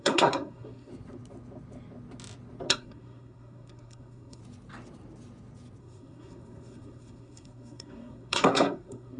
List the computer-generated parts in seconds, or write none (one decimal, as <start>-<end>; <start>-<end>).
0.0-0.9; 2.7-4.4; 5.8-9.2